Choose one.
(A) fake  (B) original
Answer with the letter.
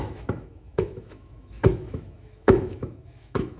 A